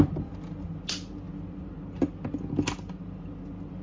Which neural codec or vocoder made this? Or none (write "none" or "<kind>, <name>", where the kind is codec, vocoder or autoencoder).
none